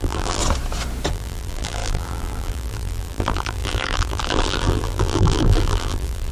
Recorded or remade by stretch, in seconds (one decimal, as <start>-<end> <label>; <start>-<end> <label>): 0.0-0.4 remade; 0.4-1.1 recorded; 1.1-6.3 remade